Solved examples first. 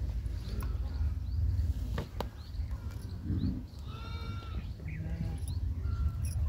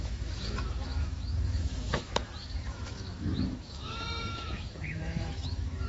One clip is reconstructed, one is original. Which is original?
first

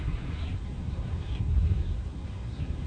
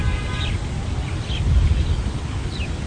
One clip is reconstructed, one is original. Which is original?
second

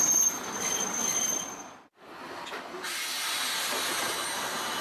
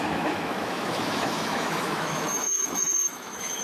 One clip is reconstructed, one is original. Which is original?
first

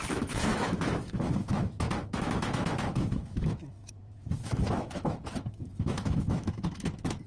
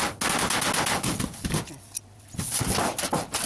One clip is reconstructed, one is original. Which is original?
second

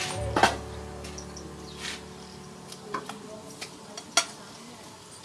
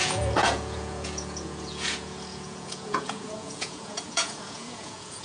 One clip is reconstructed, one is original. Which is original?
first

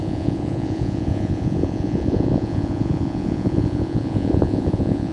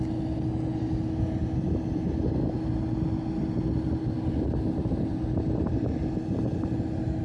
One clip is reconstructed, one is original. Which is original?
second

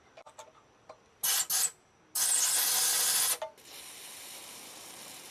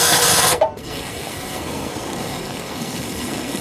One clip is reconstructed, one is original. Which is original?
first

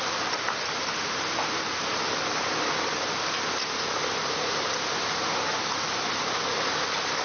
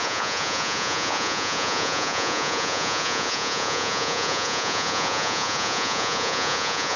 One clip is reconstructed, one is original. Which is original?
first